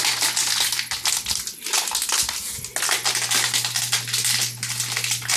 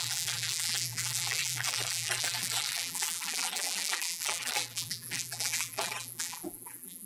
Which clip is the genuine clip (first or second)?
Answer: first